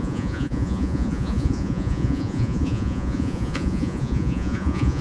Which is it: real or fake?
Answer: fake